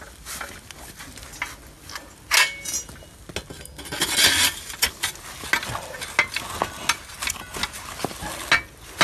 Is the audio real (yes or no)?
yes